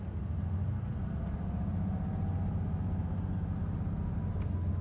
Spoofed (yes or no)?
no